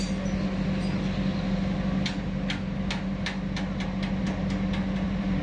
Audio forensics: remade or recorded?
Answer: recorded